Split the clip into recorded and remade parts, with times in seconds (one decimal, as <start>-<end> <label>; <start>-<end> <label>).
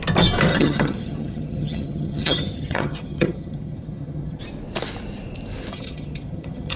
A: 0.0-0.5 recorded; 0.5-4.4 remade; 4.4-5.7 recorded; 5.7-6.8 remade